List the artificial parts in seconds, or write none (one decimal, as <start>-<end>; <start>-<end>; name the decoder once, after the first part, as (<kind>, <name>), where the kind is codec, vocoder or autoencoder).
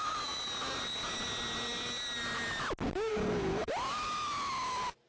3.1-3.7 (codec, HILCodec)